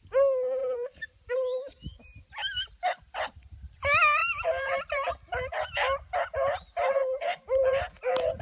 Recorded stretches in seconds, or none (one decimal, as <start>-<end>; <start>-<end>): 0.0-0.6; 1.3-4.2; 5.1-8.4